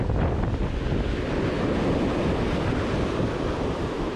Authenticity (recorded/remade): recorded